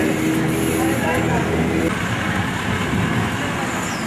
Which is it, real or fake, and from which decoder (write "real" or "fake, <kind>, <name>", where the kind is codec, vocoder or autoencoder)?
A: real